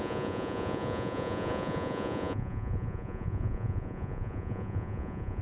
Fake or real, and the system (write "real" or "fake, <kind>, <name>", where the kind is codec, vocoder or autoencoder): fake, vocoder, Vocos